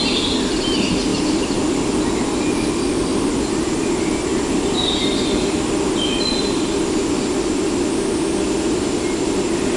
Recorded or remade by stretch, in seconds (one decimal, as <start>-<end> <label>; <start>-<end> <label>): 0.0-1.1 recorded; 1.1-3.8 remade; 3.8-9.8 recorded